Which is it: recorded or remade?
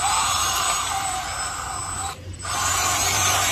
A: remade